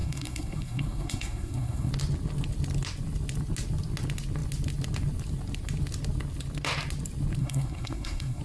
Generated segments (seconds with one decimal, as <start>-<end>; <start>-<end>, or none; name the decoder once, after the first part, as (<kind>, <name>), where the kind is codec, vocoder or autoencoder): 0.0-1.9 (codec, SNAC); 7.4-8.4